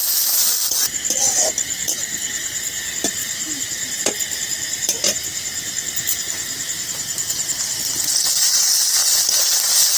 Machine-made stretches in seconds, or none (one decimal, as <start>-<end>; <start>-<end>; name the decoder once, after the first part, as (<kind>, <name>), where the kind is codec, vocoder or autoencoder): 3.2-4.0 (vocoder, BigVGAN v2); 6.1-7.8